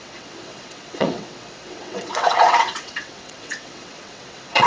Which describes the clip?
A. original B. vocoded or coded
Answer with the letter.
B